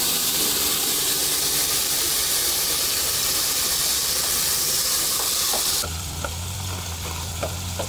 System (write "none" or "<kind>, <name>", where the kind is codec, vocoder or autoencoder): vocoder, BigVGAN v2